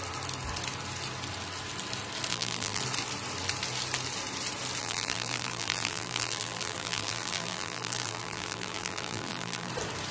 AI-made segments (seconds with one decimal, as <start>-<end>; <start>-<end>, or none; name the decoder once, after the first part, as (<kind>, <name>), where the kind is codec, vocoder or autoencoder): 2.3-2.8 (vocoder, BigVGAN v2); 4.8-9.7